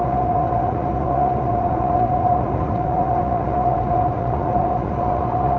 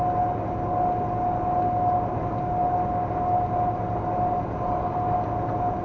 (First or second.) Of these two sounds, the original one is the second